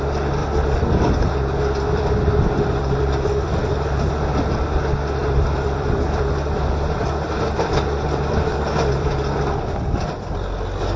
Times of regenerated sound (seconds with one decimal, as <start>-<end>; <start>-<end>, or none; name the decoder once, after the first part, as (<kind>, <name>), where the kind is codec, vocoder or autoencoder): 0.4-4.1 (vocoder, BigVGAN v2); 5.2-9.4